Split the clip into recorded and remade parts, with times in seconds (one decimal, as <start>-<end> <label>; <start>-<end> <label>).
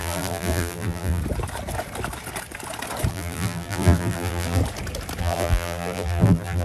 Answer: 0.0-1.2 remade; 1.2-3.1 recorded; 3.1-4.6 remade; 4.6-5.2 recorded; 5.2-6.6 remade